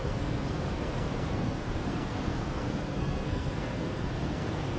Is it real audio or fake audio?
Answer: fake